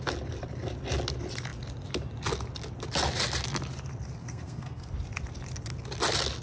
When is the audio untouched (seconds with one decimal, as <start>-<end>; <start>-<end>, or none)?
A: 0.0-4.2; 4.9-6.4